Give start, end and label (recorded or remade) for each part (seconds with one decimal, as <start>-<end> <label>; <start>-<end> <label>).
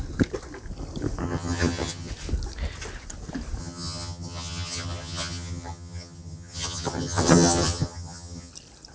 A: 0.0-1.2 recorded; 1.2-2.1 remade; 2.1-3.6 recorded; 3.6-8.5 remade; 8.5-8.9 recorded